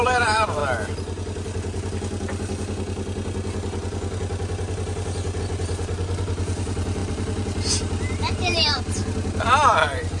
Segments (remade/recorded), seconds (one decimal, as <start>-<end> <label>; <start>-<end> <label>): 0.0-0.6 remade; 0.6-5.4 recorded; 5.4-9.0 remade; 9.0-9.7 recorded; 9.7-10.2 remade